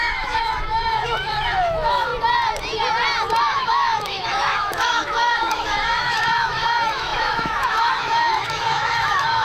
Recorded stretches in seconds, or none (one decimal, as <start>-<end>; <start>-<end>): 2.1-3.4